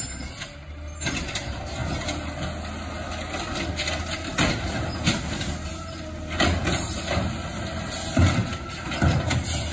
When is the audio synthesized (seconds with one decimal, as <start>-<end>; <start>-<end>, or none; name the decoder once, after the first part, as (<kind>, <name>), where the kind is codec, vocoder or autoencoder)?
none